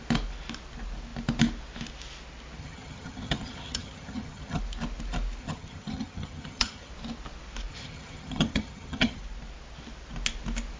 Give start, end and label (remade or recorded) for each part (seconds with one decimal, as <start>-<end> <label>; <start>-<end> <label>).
0.0-2.6 recorded; 2.6-4.6 remade; 4.6-5.4 recorded; 5.4-6.9 remade; 6.9-7.7 recorded; 7.7-9.2 remade; 9.2-10.8 recorded